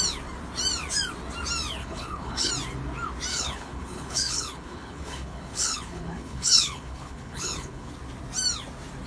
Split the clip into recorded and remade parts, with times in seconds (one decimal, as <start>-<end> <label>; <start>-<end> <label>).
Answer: 0.0-1.8 recorded; 1.8-2.5 remade; 2.5-3.3 recorded; 3.3-7.9 remade; 7.9-9.1 recorded